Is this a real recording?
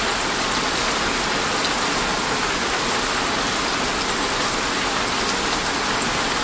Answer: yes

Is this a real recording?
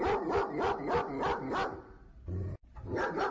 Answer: yes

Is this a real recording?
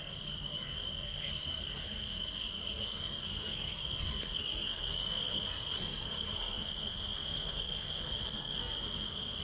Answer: no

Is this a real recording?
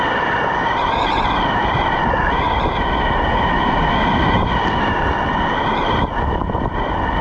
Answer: yes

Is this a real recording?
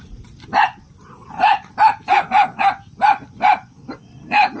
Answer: yes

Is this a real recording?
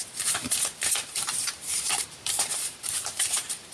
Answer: no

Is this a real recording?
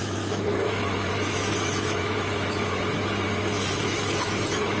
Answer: no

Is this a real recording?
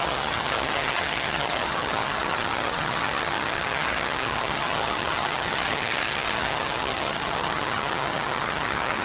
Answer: no